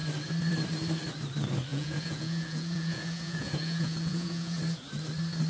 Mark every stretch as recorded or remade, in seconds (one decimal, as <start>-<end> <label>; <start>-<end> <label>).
0.0-1.7 recorded; 1.7-4.6 remade; 4.6-5.5 recorded